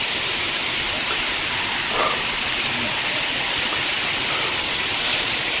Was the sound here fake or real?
real